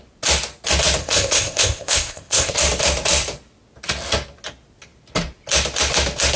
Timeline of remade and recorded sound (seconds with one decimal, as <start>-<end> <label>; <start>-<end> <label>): 0.0-1.0 recorded; 1.0-2.5 remade; 2.5-6.4 recorded